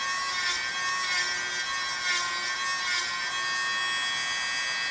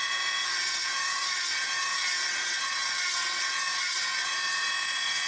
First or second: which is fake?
second